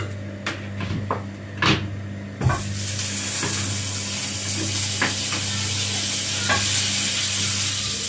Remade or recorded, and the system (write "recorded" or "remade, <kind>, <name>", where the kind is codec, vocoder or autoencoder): recorded